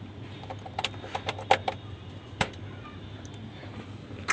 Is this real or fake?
real